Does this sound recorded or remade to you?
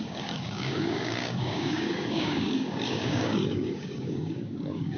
remade